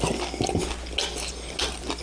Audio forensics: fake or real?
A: real